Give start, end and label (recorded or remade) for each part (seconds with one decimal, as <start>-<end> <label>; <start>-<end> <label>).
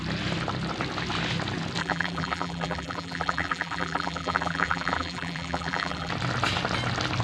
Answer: 0.0-1.8 recorded; 1.8-6.1 remade; 6.1-7.2 recorded